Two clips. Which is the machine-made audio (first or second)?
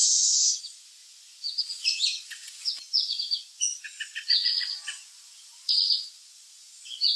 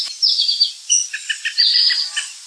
first